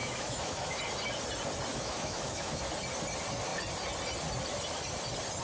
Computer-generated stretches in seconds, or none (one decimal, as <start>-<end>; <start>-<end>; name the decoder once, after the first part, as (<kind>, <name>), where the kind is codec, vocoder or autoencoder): 0.0-0.8 (autoencoder, DAC-VAE); 1.7-2.6